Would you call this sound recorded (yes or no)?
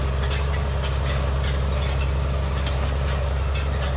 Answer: yes